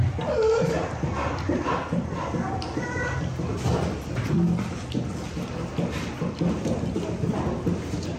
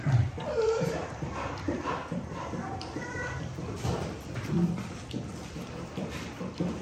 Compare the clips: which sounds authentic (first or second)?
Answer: first